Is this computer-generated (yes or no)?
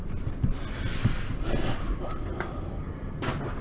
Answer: no